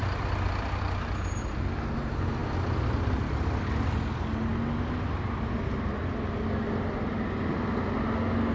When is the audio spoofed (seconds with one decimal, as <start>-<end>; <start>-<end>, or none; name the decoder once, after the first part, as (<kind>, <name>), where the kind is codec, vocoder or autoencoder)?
none

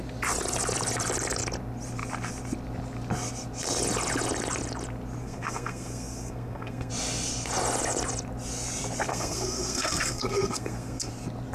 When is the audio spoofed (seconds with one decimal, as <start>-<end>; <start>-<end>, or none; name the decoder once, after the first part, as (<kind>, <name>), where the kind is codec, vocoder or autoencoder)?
5.2-6.9 (codec, SNAC); 9.1-11.1

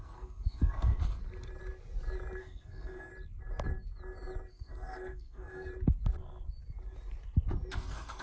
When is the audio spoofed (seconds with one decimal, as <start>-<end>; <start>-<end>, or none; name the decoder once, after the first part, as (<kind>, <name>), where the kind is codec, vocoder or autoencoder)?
0.0-1.2 (codec, SNAC); 2.4-3.1; 4.5-5.7; 7.7-8.2

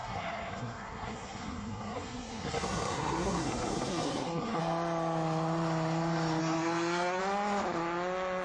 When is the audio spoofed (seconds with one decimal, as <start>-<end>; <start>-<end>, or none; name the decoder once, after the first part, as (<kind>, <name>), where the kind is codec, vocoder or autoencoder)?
0.0-4.6 (codec, SNAC); 6.4-7.2